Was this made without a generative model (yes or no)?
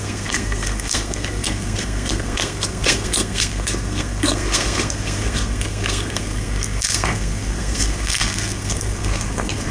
no